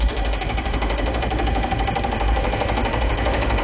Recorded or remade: remade